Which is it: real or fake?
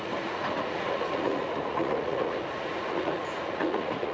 fake